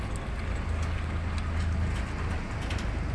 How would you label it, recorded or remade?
recorded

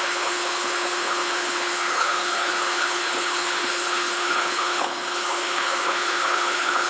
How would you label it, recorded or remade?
remade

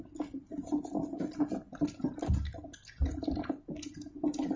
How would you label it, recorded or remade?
recorded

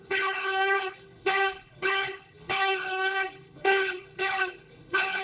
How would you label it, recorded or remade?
remade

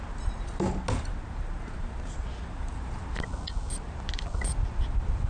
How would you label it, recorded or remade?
recorded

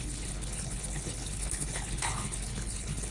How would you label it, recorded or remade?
remade